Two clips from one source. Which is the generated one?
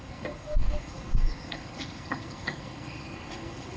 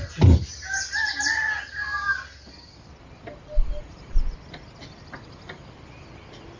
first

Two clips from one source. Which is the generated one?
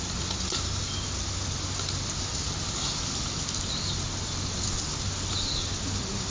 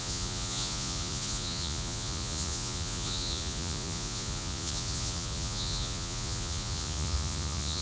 second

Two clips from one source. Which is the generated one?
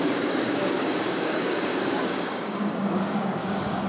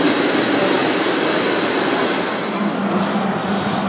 first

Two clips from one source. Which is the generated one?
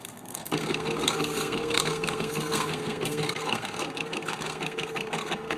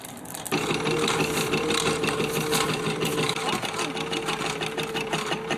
first